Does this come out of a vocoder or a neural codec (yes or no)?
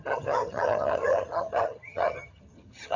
yes